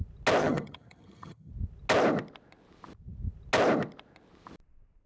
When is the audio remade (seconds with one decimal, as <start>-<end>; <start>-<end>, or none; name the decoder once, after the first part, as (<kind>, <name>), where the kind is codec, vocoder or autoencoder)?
0.4-1.5 (vocoder, HiFi-GAN)